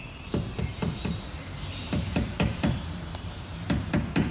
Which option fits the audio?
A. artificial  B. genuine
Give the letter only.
A